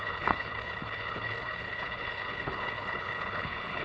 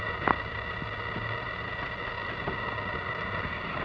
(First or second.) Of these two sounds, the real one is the second